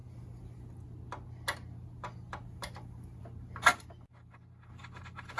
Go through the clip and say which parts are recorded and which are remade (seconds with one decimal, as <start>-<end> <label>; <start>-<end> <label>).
0.0-5.4 recorded